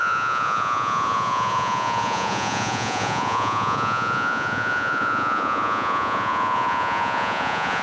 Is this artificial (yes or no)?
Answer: yes